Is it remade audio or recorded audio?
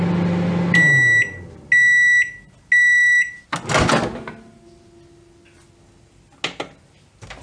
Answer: recorded